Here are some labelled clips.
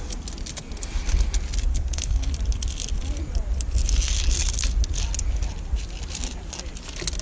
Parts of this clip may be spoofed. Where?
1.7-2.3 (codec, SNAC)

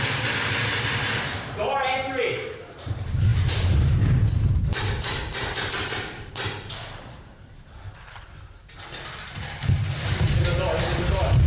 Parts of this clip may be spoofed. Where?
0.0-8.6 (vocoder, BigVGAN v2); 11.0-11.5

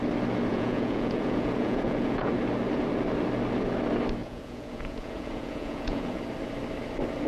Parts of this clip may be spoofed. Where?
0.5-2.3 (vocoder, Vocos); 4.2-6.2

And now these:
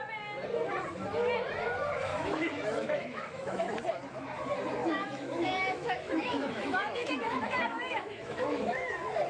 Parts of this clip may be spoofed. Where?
2.1-3.7 (autoencoder, DAC-VAE); 4.8-8.9

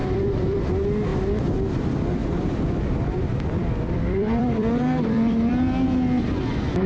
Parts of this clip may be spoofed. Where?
0.0-0.7 (vocoder, BigVGAN v2); 2.2-5.5